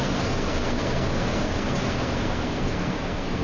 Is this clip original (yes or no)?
no